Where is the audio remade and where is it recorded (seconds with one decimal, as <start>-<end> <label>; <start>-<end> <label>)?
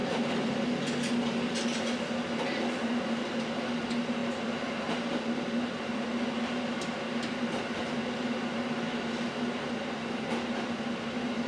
0.0-11.5 recorded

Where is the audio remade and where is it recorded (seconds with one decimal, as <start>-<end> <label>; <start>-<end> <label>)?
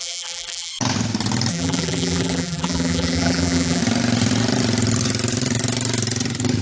0.0-0.7 remade; 0.7-1.5 recorded; 1.5-3.8 remade; 3.8-6.6 recorded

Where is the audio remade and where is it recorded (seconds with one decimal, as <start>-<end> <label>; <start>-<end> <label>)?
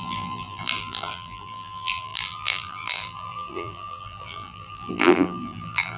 0.0-6.0 remade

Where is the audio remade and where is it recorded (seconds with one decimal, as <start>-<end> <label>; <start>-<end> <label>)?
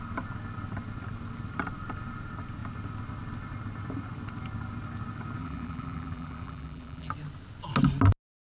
0.0-5.4 recorded; 5.4-7.1 remade; 7.1-8.6 recorded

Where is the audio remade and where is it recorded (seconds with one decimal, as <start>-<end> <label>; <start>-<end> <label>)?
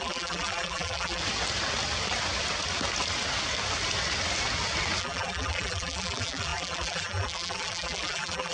0.0-1.2 remade; 1.2-5.0 recorded; 5.0-8.5 remade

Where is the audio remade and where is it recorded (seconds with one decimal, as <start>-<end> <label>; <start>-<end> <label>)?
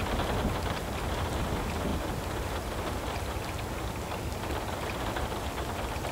0.0-6.1 recorded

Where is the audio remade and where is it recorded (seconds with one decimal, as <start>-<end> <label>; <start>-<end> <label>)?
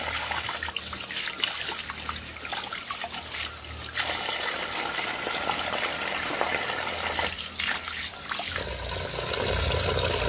0.0-10.3 recorded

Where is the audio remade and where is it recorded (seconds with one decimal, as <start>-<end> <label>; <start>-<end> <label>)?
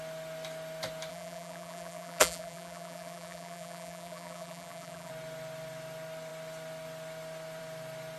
0.0-1.1 recorded; 1.1-5.1 remade; 5.1-8.2 recorded